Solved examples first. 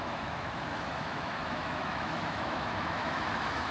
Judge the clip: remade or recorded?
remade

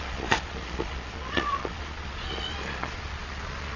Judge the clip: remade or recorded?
remade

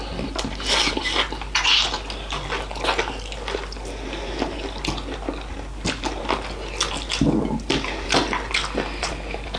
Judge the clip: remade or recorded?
recorded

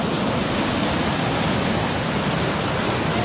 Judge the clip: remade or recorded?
recorded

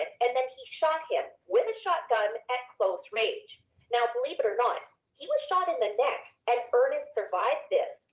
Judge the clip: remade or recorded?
remade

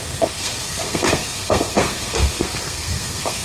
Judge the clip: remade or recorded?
remade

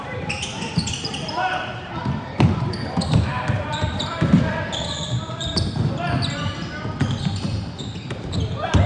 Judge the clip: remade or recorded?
remade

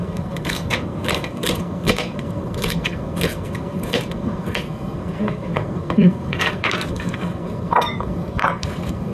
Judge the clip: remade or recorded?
remade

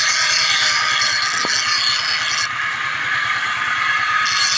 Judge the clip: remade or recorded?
recorded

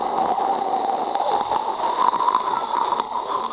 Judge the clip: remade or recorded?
recorded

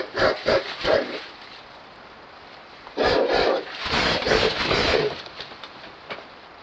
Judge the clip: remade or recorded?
remade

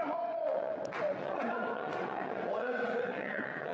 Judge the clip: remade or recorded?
remade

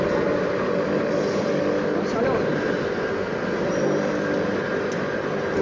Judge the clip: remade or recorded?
recorded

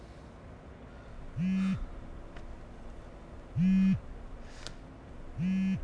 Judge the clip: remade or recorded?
recorded